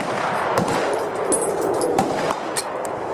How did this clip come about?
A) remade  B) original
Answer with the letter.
B